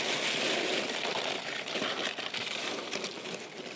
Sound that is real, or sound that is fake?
real